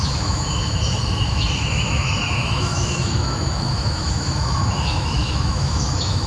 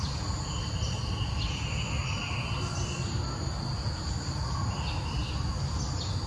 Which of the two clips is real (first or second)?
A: second